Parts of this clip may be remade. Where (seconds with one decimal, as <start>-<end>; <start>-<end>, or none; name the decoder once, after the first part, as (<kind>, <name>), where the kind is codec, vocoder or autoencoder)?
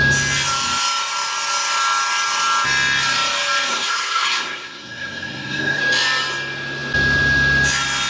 3.7-5.8 (codec, SNAC)